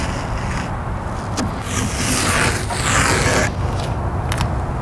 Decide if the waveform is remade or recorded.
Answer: recorded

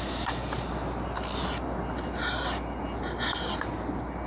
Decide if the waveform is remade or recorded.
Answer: recorded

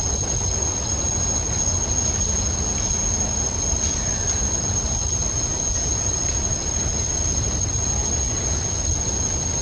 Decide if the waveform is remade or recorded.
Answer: recorded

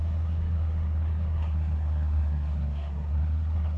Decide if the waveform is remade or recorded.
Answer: remade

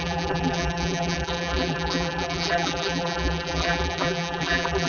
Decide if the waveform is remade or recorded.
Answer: remade